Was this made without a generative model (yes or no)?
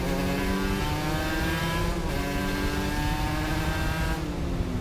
yes